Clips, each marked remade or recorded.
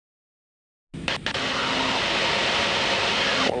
recorded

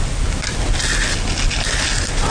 recorded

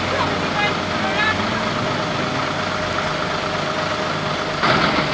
recorded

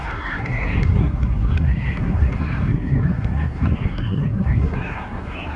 remade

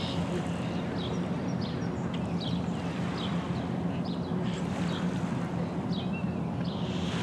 recorded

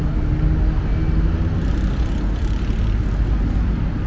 recorded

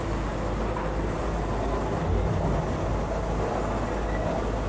recorded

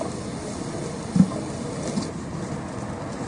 recorded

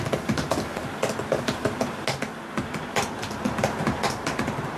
recorded